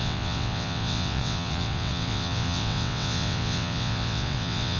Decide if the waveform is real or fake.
fake